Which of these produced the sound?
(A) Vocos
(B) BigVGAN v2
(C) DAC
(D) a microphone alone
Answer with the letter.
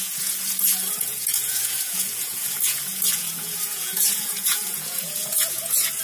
A